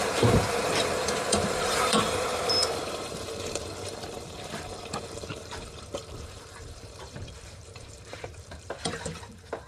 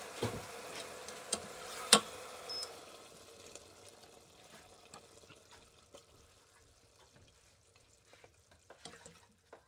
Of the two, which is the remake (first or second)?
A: first